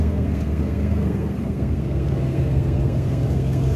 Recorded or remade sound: remade